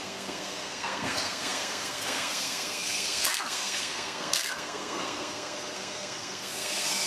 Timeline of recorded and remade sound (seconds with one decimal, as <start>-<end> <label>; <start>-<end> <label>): 0.0-7.1 remade